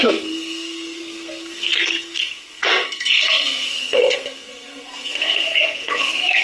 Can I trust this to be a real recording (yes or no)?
no